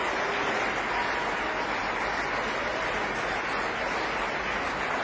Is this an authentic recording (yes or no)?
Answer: yes